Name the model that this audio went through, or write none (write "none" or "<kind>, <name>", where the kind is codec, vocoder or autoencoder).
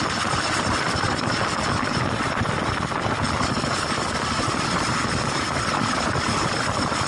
none